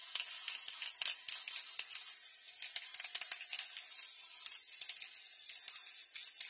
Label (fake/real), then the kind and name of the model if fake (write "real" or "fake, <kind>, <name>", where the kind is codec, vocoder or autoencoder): real